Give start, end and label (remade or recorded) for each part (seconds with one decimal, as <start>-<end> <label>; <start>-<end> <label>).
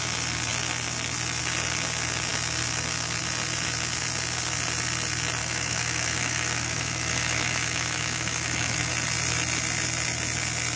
0.0-5.4 recorded; 5.4-8.9 remade; 8.9-10.8 recorded